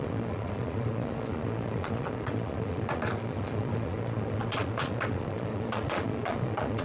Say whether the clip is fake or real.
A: fake